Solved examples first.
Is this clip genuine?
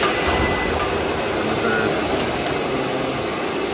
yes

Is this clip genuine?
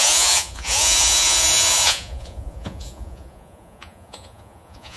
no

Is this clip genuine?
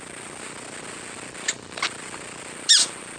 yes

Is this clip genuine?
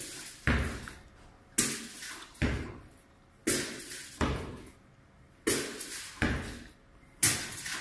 yes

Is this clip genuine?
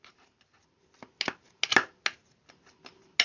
yes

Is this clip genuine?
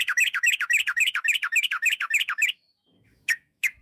no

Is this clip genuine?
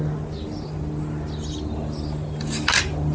yes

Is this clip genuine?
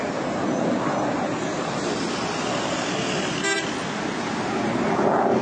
yes